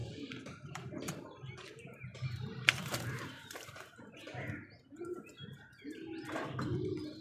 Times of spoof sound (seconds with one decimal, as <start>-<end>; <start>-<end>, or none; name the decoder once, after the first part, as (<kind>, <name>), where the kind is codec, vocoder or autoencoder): 0.0-1.4 (vocoder, BigVGAN v2); 2.1-4.2